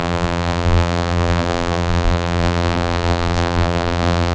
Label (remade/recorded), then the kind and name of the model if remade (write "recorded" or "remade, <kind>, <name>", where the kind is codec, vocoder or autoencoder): remade, vocoder, BigVGAN v2